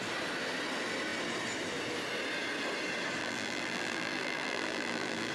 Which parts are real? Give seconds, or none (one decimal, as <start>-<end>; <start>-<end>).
0.0-3.2